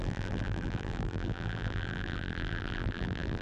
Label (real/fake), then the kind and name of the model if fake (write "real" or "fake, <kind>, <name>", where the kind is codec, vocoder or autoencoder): fake, vocoder, BigVGAN v2